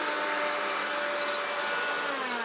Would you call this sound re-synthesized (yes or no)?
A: no